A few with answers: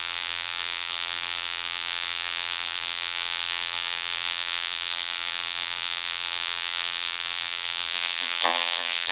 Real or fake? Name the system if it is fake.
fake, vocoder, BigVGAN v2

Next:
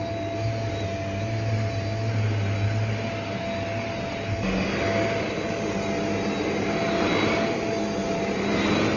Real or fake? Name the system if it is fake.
real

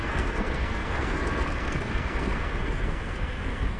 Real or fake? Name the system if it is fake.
fake, codec, SNAC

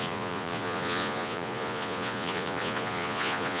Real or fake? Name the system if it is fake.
fake, vocoder, Vocos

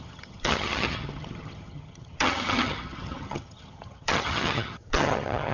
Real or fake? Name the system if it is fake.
fake, vocoder, HiFi-GAN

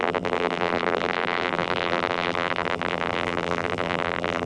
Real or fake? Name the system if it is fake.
fake, vocoder, BigVGAN v2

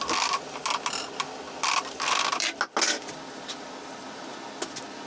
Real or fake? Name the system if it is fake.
real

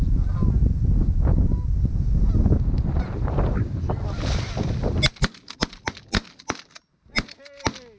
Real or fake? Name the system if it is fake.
real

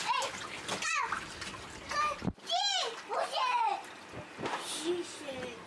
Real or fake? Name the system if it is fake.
real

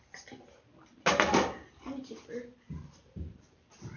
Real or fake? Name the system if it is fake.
real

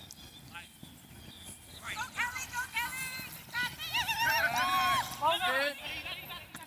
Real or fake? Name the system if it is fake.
real